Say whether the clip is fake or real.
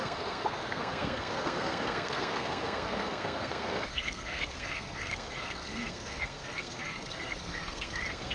fake